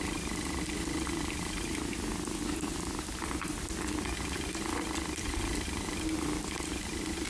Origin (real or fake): real